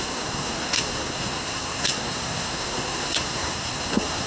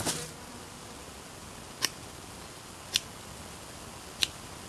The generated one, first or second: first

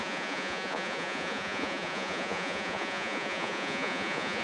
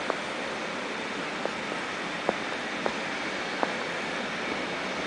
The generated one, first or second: first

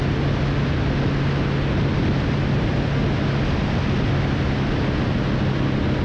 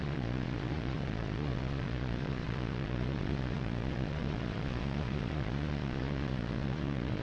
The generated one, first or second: second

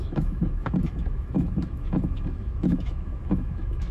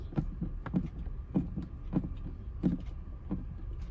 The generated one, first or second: first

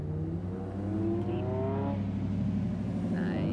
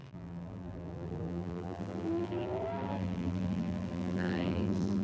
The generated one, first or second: second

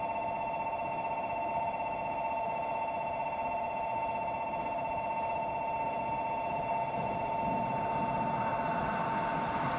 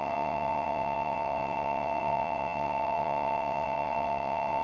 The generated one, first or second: second